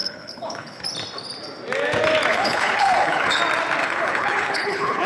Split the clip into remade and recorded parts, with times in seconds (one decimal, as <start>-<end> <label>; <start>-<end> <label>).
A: 0.0-0.8 remade; 0.8-2.3 recorded; 2.3-3.4 remade; 3.4-3.8 recorded; 3.8-5.1 remade